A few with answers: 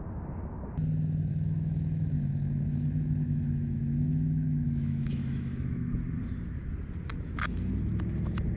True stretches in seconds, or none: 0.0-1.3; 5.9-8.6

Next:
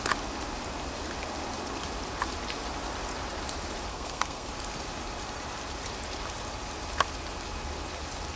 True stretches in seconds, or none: 0.0-3.9; 4.5-8.4